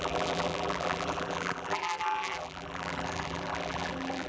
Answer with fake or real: fake